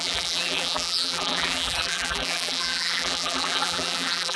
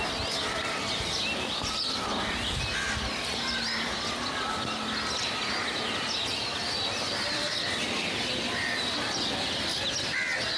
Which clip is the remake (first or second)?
first